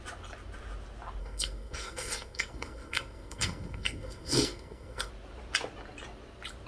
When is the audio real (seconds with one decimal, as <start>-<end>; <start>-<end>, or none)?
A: 0.0-1.2; 5.1-6.7